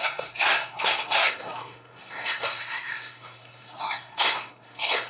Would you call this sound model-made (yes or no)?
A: yes